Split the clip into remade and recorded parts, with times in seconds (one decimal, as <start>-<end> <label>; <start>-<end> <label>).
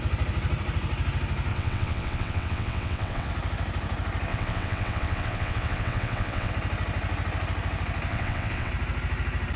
0.0-1.5 recorded; 1.5-3.3 remade; 3.3-4.3 recorded; 4.3-6.5 remade; 6.5-8.1 recorded; 8.1-8.7 remade; 8.7-9.6 recorded